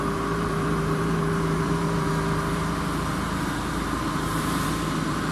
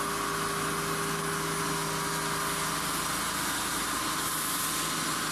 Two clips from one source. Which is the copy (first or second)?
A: first